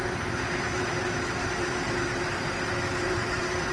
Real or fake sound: fake